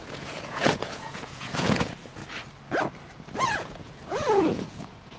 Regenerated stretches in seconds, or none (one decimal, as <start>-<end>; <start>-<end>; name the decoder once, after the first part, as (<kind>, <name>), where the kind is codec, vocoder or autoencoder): 0.0-2.2 (vocoder, Vocos); 3.4-5.2